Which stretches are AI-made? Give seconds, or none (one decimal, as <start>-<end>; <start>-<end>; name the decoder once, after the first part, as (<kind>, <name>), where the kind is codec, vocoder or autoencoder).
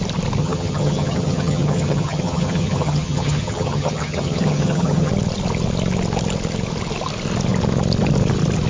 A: 0.4-5.1 (vocoder, HiFi-GAN)